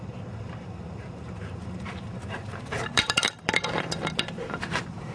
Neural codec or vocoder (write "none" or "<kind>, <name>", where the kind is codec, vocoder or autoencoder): vocoder, BigVGAN v2